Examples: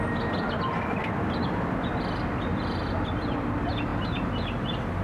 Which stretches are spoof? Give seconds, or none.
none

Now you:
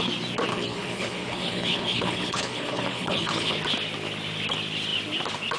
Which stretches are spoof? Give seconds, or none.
0.5-3.5 (codec, HILCodec)

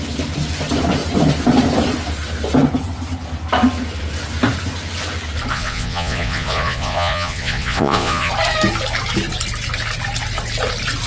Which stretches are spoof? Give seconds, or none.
5.5-8.3 (vocoder, Vocos)

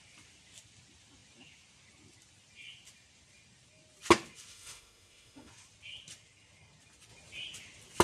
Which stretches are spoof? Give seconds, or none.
4.5-5.5 (autoencoder, DAC-VAE)